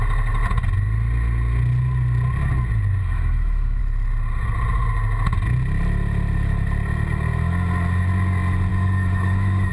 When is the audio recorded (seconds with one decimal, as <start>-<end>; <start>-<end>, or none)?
0.0-3.0; 3.8-8.7

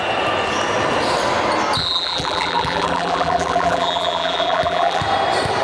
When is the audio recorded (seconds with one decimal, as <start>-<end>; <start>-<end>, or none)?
0.0-1.8; 5.0-5.6

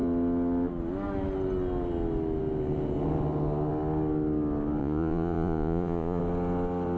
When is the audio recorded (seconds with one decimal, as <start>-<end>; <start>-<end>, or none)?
0.0-4.8; 6.2-7.0

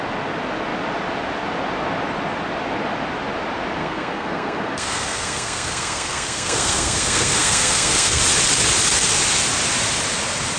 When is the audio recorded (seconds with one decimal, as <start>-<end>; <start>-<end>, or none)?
0.0-3.8; 8.2-10.6

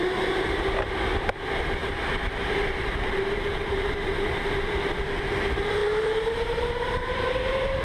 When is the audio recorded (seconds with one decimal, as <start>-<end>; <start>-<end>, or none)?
0.0-1.8; 4.7-5.8